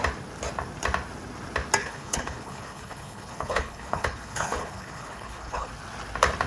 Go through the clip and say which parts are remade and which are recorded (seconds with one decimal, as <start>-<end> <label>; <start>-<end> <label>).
0.0-1.8 recorded; 1.8-5.7 remade; 5.7-6.5 recorded